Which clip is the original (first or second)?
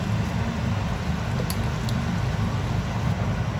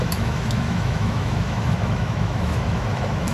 first